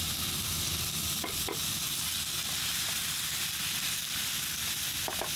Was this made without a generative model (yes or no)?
yes